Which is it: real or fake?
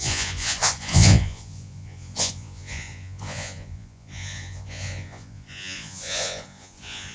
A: fake